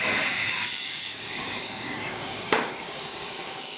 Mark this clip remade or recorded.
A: remade